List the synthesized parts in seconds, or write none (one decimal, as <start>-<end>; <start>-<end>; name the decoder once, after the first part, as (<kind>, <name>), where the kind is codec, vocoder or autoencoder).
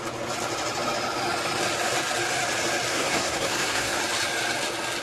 2.9-4.0 (codec, SNAC)